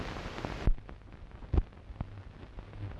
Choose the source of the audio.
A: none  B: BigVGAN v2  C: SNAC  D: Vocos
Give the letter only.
A